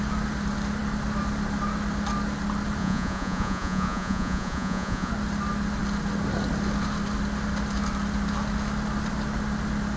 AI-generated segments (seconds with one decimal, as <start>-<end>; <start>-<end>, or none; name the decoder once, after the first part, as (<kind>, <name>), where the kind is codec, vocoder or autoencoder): 2.8-5.1 (vocoder, Vocos)